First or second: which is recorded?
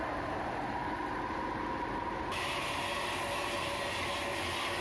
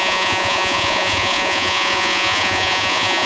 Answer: first